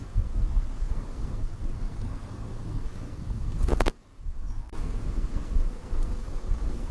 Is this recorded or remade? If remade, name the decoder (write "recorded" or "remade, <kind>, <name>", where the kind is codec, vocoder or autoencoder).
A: remade, codec, SNAC